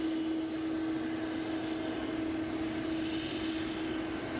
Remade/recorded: recorded